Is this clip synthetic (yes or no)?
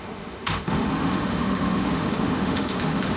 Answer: yes